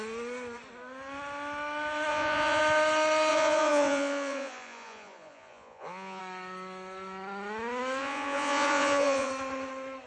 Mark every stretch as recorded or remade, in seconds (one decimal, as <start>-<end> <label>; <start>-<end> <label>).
0.0-2.1 recorded; 2.1-2.6 remade; 2.6-3.3 recorded; 3.3-6.2 remade; 6.2-8.0 recorded; 8.0-9.3 remade; 9.3-10.1 recorded